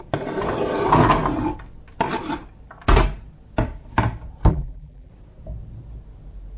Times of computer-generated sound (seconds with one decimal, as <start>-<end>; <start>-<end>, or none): 4.5-5.1